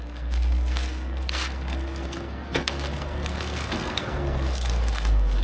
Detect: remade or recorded remade